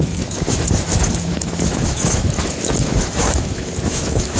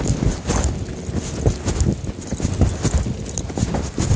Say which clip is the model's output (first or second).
first